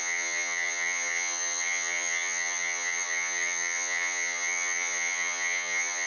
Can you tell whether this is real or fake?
fake